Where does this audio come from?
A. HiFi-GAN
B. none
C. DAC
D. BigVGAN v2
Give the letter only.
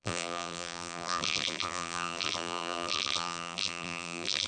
D